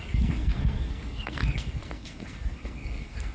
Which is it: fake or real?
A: fake